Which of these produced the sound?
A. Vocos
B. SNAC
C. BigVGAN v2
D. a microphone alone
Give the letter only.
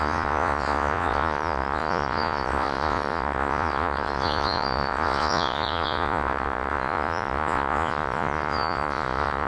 A